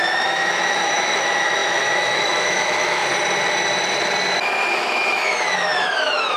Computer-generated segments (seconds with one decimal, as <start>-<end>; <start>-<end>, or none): 0.0-3.0; 4.7-6.4